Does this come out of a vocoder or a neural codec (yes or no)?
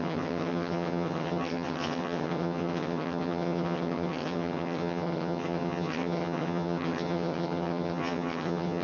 yes